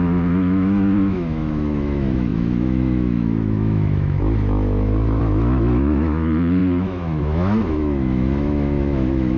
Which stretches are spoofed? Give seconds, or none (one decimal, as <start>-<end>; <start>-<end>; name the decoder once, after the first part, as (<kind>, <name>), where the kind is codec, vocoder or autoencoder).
0.0-9.4 (autoencoder, DAC-VAE)